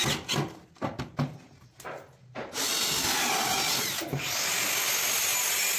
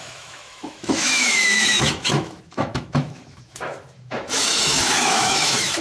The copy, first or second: second